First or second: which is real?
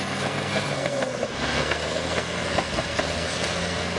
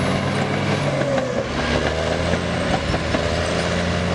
second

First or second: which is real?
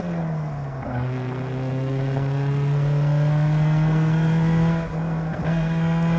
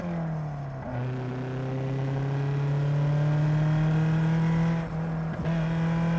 second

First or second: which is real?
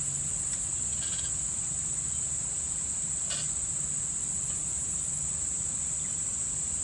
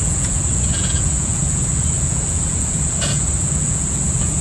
first